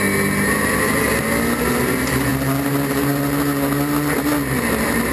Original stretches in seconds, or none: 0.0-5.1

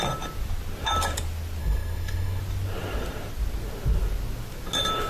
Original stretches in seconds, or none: 0.0-1.6; 2.4-5.1